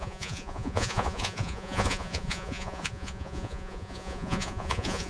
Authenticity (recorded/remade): remade